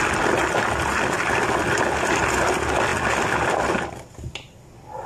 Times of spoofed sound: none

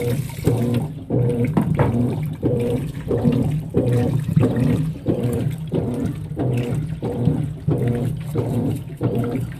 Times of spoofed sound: 1.3-6.0 (vocoder, BigVGAN v2); 8.3-9.6

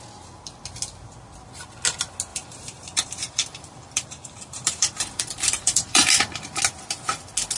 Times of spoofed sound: 2.3-6.6 (vocoder, BigVGAN v2)

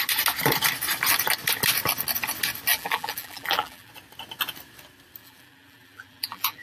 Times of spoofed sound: 2.7-3.9 (vocoder, BigVGAN v2); 5.2-6.6

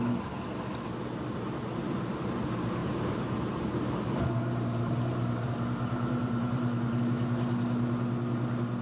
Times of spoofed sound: 1.8-2.3 (vocoder, BigVGAN v2); 2.8-7.0

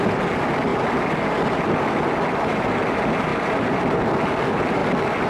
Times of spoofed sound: 3.3-3.8 (vocoder, BigVGAN v2)

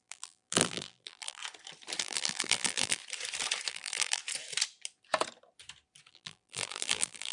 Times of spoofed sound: 0.0-1.4 (vocoder, BigVGAN v2); 2.0-3.0; 3.7-4.2; 6.1-7.3

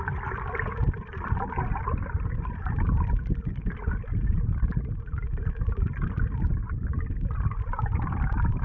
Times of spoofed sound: none